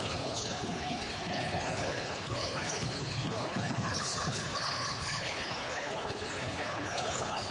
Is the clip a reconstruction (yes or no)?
yes